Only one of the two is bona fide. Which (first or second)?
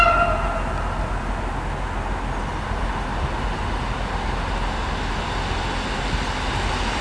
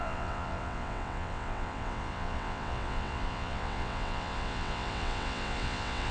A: first